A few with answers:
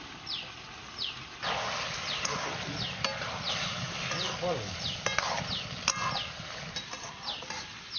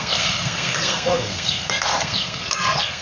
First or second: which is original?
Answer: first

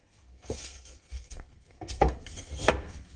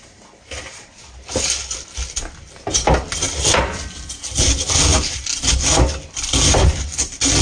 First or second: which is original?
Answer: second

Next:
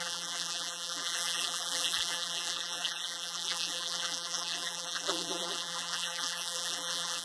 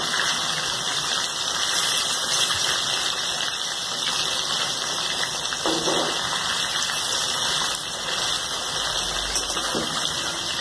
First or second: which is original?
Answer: second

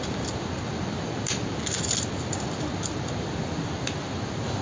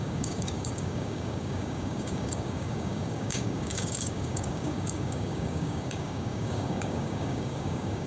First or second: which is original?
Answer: first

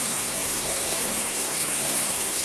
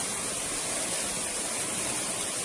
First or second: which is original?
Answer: second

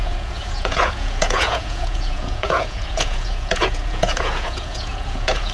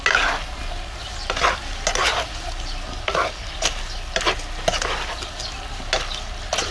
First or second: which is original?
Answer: second